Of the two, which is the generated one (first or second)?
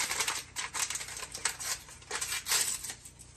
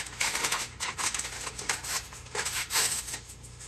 second